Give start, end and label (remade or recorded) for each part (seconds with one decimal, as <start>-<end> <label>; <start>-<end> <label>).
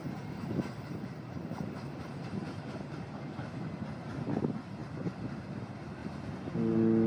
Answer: 0.0-3.1 remade; 3.1-4.8 recorded; 4.8-5.4 remade; 5.4-7.1 recorded